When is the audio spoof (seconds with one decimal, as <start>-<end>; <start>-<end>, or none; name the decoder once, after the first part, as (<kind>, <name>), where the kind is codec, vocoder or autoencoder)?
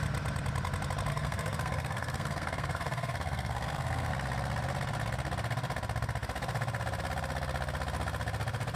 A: 1.1-4.1 (codec, SNAC)